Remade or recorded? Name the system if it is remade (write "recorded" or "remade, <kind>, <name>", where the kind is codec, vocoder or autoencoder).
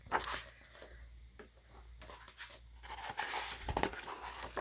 recorded